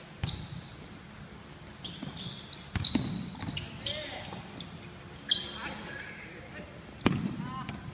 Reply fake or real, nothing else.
real